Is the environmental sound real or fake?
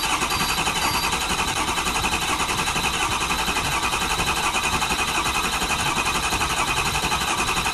fake